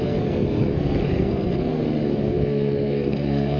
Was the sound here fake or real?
fake